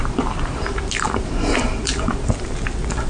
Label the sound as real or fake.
real